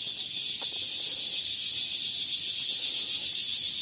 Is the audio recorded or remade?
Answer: recorded